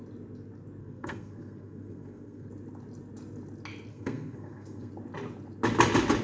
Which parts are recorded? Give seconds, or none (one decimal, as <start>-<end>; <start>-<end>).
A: 0.0-0.8; 2.5-3.9; 4.9-6.2